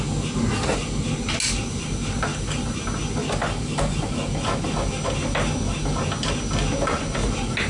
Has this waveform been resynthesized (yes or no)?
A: no